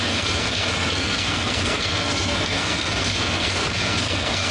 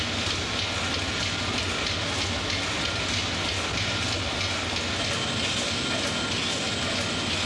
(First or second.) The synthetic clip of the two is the first